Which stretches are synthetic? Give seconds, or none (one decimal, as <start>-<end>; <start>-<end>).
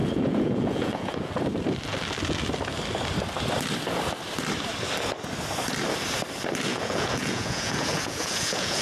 0.0-1.3; 6.7-8.8